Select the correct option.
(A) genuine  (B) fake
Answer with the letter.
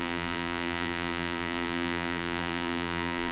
B